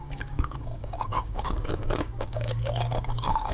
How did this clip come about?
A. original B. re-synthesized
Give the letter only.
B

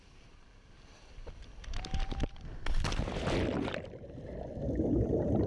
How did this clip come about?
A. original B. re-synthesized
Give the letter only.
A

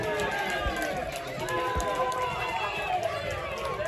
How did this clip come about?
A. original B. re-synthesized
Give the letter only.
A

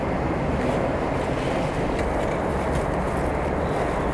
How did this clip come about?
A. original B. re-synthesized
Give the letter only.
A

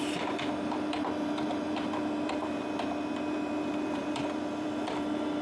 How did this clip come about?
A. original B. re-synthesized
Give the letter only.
B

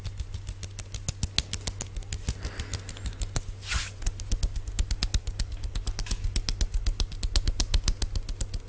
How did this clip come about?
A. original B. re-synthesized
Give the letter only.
A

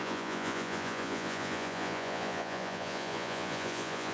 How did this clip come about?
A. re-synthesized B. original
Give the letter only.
A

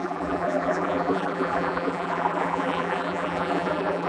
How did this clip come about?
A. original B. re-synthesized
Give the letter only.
B